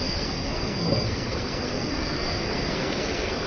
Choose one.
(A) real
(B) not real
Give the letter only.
B